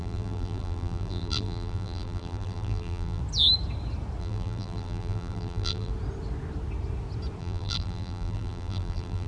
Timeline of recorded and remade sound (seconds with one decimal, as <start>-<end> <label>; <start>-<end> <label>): 0.0-3.2 remade; 3.2-4.2 recorded; 4.2-5.9 remade; 5.9-7.4 recorded; 7.4-9.3 remade

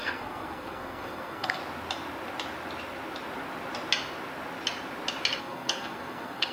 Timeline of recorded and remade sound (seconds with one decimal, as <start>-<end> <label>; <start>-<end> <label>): 0.0-1.6 remade; 1.6-5.4 recorded; 5.4-6.5 remade